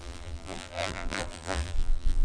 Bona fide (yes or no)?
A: no